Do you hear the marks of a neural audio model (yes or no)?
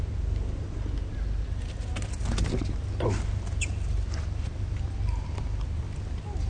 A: no